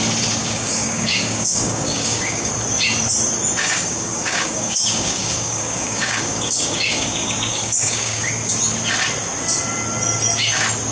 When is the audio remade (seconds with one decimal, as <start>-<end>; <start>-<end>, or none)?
0.4-2.5; 3.6-8.3